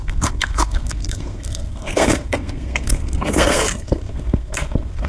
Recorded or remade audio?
remade